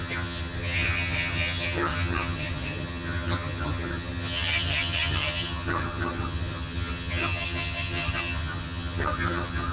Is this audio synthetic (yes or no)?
yes